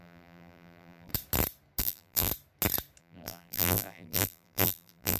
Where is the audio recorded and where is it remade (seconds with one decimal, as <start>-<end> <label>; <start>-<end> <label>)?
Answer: 0.0-1.1 remade; 1.1-1.8 recorded; 1.8-2.3 remade; 2.3-3.0 recorded; 3.0-5.2 remade